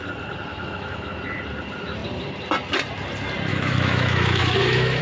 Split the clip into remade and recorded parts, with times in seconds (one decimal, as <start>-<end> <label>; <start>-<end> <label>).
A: 0.0-0.5 recorded; 0.5-1.2 remade; 1.2-3.5 recorded; 3.5-5.0 remade

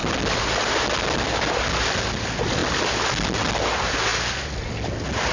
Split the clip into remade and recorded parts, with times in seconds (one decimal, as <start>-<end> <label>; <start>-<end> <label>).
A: 0.0-5.3 recorded

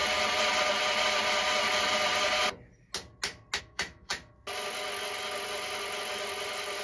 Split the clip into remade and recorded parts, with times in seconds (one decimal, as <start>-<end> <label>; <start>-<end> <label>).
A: 0.0-3.6 recorded; 3.6-4.1 remade; 4.1-6.8 recorded

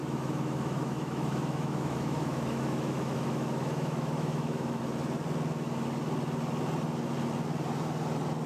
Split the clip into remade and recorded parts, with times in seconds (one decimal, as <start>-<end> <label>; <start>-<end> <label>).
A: 0.0-4.8 remade; 4.8-8.5 recorded

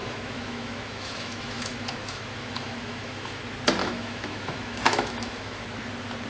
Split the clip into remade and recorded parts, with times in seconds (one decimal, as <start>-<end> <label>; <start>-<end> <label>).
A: 0.0-3.4 remade; 3.4-3.8 recorded; 3.8-5.6 remade; 5.6-6.3 recorded

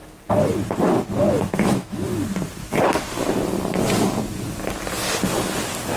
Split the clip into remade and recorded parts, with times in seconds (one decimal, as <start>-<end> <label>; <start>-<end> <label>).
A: 0.0-1.4 recorded; 1.4-2.1 remade; 2.1-6.0 recorded

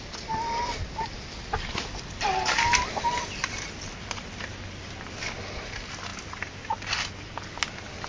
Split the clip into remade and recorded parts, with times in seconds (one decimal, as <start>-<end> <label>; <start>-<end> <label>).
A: 0.0-8.1 recorded